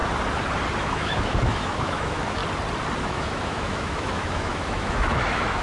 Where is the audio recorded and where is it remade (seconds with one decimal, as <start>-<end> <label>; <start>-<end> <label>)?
0.0-0.8 recorded; 0.8-2.4 remade; 2.4-3.0 recorded; 3.0-5.6 remade